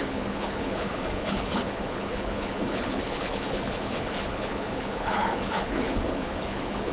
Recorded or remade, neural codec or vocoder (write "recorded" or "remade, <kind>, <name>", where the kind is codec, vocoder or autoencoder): remade, codec, HILCodec